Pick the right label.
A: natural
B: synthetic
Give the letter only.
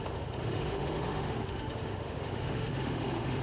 B